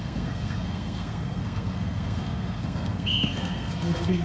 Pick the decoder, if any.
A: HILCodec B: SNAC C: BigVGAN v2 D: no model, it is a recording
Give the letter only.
B